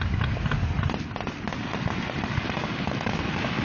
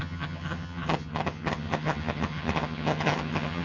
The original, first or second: first